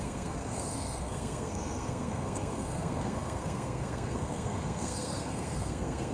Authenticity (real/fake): fake